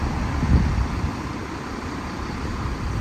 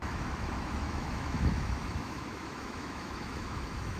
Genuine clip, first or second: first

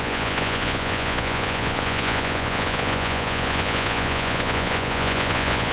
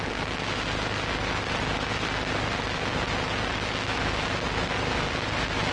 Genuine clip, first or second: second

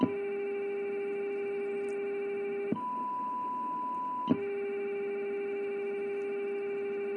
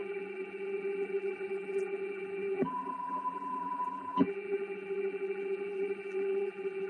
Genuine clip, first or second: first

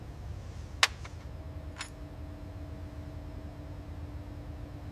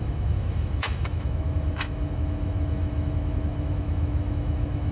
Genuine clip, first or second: first